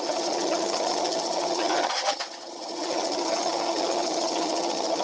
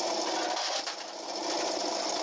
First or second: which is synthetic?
first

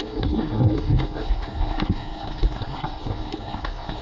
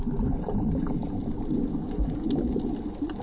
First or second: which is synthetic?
first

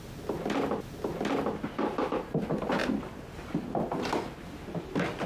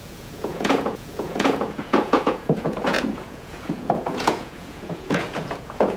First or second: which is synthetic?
second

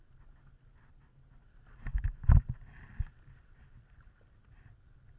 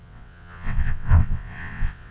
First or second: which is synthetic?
second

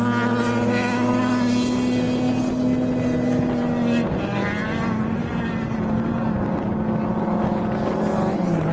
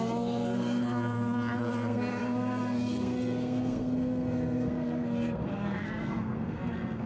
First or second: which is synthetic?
second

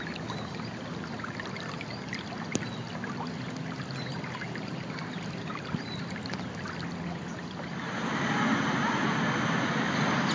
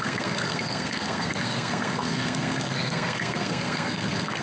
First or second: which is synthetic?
second